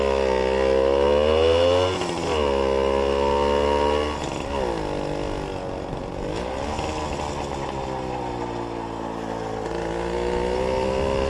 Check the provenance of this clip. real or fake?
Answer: real